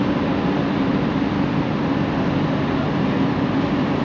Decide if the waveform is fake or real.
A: real